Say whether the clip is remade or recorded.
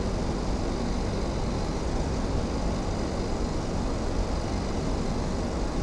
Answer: recorded